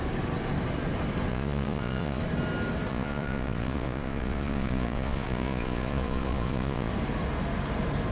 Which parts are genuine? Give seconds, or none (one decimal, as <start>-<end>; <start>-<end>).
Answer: 0.0-1.3; 2.2-2.9; 6.9-8.1